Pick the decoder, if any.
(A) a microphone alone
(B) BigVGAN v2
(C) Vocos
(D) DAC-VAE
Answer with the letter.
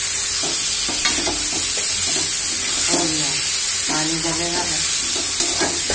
A